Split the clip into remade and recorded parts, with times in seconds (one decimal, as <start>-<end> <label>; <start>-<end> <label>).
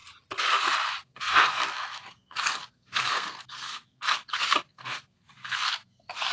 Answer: 0.0-1.0 recorded; 1.0-6.3 remade